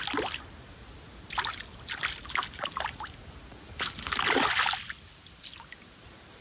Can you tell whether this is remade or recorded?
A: recorded